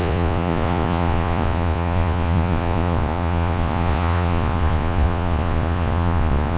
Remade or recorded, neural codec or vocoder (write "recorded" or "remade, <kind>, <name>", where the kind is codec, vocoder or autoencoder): remade, vocoder, Vocos